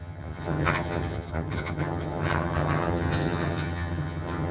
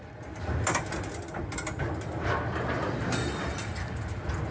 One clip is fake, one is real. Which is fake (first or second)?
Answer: first